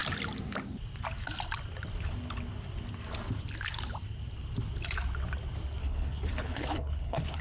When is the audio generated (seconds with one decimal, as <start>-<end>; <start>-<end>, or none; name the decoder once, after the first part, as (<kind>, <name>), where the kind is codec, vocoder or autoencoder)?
5.8-7.4 (codec, HILCodec)